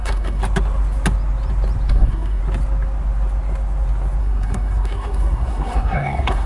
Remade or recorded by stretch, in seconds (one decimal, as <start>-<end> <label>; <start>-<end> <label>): 0.0-0.4 remade; 0.4-1.9 recorded; 1.9-2.4 remade; 2.4-4.2 recorded; 4.2-6.5 remade